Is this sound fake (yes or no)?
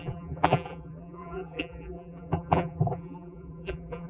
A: yes